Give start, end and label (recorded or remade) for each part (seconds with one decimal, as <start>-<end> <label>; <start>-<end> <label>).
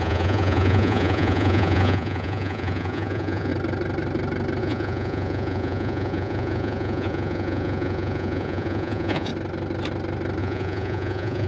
0.0-3.5 remade; 3.5-4.6 recorded; 4.6-9.3 remade; 9.3-10.4 recorded; 10.4-11.5 remade